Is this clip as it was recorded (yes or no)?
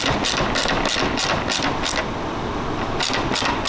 yes